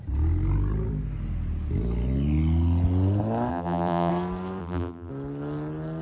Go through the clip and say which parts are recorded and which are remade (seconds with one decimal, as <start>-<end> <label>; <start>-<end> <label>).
0.0-3.5 recorded; 3.5-4.1 remade; 4.1-4.6 recorded; 4.6-5.1 remade; 5.1-6.0 recorded